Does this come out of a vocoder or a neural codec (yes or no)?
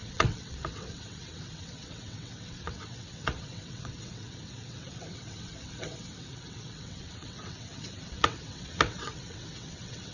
yes